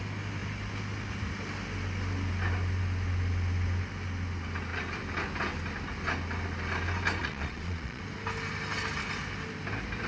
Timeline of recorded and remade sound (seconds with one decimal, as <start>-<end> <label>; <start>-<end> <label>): 0.0-7.2 recorded; 7.2-8.0 remade; 8.0-10.1 recorded